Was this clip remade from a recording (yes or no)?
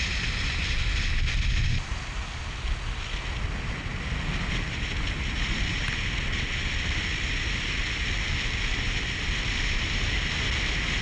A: no